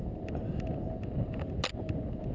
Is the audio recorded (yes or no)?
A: yes